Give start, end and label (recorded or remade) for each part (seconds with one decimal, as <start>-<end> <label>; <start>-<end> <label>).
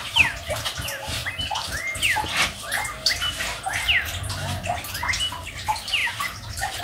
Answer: 0.0-1.2 remade; 1.2-5.3 recorded; 5.3-6.8 remade